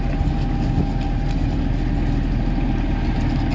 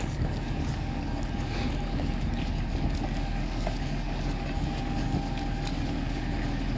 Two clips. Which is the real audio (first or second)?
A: first